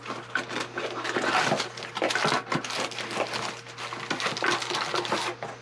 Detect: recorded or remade recorded